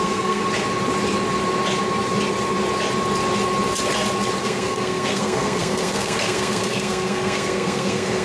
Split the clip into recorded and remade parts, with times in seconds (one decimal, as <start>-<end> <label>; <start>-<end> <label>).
0.0-0.4 remade; 0.4-4.4 recorded; 4.4-8.2 remade